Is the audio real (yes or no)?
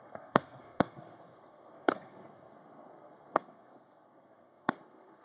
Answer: no